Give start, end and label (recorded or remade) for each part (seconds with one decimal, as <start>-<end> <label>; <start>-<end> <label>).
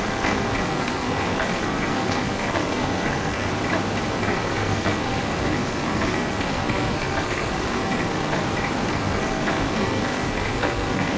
0.0-3.5 remade; 3.5-4.1 recorded; 4.1-8.4 remade; 8.4-8.9 recorded; 8.9-11.2 remade